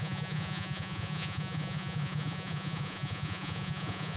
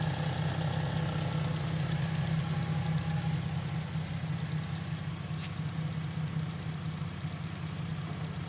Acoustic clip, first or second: second